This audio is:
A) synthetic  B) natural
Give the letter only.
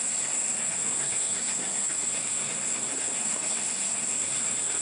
A